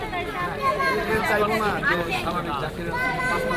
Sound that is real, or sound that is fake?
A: real